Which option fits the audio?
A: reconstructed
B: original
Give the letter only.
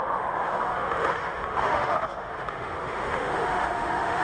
A